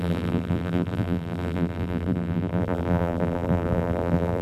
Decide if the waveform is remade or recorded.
remade